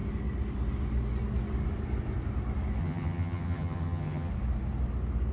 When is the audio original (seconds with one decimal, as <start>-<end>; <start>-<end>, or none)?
0.0-2.8; 4.3-5.3